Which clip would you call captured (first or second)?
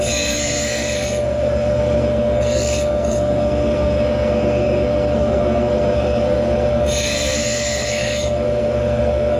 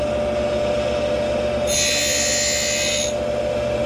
second